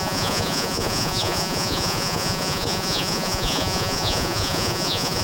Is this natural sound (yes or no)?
no